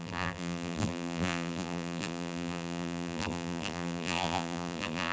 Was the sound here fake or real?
fake